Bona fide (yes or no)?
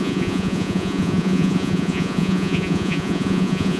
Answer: no